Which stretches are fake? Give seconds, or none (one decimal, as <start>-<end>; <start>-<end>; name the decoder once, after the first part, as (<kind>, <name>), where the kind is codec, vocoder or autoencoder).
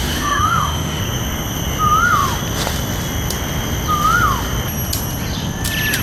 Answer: 0.0-1.0 (autoencoder, DAC-VAE)